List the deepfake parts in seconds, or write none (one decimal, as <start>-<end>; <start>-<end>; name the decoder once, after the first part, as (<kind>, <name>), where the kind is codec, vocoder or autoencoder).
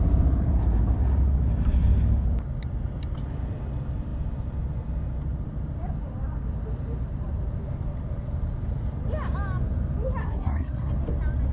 10.2-10.9 (codec, SNAC)